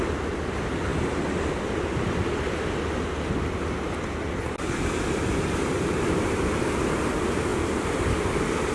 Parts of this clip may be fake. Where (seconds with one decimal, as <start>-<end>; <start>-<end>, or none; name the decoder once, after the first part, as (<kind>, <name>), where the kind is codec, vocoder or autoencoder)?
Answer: none